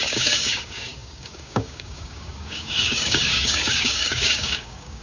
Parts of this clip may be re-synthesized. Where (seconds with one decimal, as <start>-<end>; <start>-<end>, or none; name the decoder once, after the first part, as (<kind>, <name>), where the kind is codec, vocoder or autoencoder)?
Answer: 0.0-5.0 (codec, DAC)